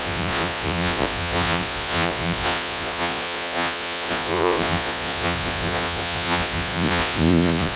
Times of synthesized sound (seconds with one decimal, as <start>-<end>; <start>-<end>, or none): 0.0-7.8